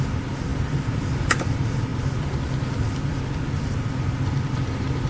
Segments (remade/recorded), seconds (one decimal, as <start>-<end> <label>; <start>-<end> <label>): 0.0-0.5 recorded; 0.5-1.3 remade; 1.3-5.1 recorded